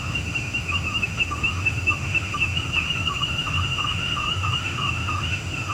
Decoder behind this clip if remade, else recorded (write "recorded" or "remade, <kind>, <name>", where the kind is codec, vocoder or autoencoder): remade, autoencoder, DAC-VAE